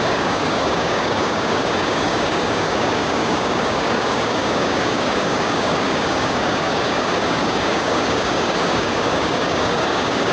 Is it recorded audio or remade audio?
remade